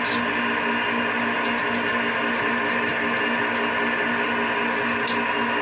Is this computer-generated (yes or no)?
no